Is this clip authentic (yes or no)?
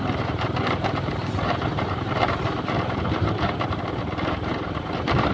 no